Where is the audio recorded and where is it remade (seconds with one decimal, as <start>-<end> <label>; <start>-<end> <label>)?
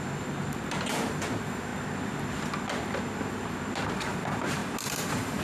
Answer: 0.0-1.7 remade; 1.7-3.9 recorded; 3.9-4.6 remade; 4.6-5.4 recorded